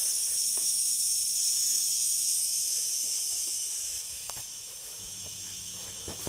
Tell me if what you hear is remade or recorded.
remade